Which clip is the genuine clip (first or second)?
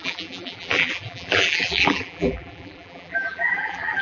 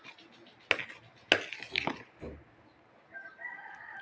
second